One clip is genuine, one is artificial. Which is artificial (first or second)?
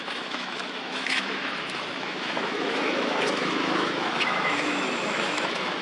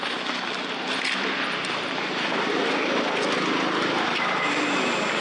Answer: first